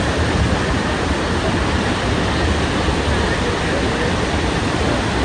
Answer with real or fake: real